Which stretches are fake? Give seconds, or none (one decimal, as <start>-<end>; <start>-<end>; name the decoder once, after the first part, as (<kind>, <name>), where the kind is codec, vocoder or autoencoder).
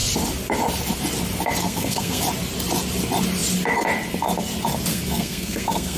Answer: 1.6-2.2 (codec, SNAC); 4.9-6.0